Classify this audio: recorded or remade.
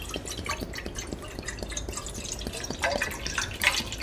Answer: recorded